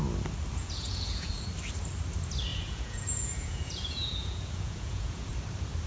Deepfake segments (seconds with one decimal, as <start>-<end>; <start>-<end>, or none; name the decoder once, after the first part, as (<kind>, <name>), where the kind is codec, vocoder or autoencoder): 0.6-1.3 (vocoder, Vocos); 2.5-5.3